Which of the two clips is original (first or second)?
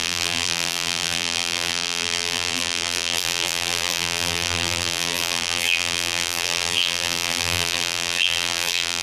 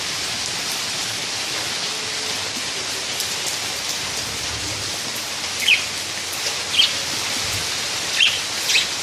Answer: second